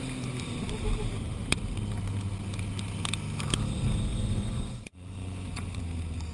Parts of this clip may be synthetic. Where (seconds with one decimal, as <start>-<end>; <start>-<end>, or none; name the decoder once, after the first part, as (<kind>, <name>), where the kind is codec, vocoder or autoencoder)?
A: 4.1-5.8 (vocoder, Vocos)